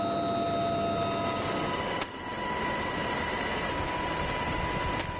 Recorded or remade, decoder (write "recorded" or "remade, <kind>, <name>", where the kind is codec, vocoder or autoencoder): recorded